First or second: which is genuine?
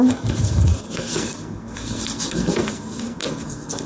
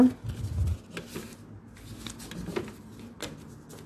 second